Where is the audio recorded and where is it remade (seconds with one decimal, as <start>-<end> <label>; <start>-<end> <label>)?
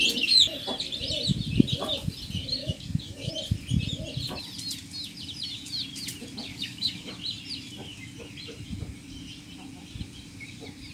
0.0-2.6 recorded; 2.6-3.3 remade; 3.3-6.5 recorded; 6.5-7.1 remade; 7.1-10.9 recorded